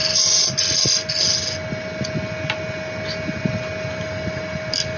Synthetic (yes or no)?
no